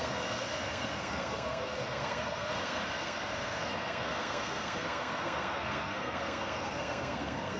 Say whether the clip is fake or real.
fake